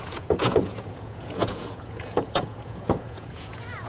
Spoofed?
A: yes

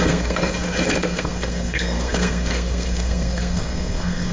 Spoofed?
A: yes